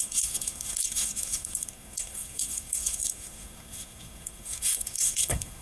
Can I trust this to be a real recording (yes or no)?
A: no